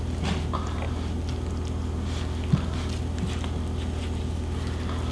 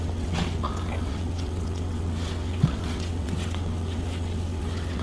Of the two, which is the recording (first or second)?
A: first